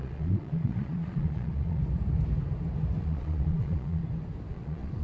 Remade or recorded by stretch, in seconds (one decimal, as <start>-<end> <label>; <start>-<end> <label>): 0.0-1.8 remade; 1.8-3.0 recorded; 3.0-4.0 remade; 4.0-4.5 recorded; 4.5-5.0 remade